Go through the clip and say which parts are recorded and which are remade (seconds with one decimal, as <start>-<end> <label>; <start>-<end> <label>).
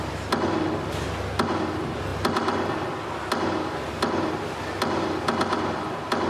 0.0-6.3 recorded